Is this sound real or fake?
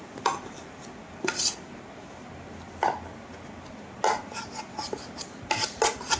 real